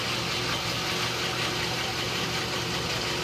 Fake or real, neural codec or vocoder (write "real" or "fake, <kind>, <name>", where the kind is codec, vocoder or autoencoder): fake, vocoder, BigVGAN v2